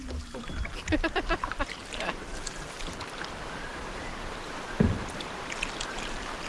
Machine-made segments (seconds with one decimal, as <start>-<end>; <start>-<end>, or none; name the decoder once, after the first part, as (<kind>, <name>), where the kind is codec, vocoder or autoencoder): 1.8-5.4 (vocoder, BigVGAN v2)